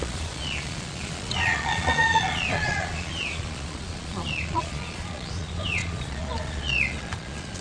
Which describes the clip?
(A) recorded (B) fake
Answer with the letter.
B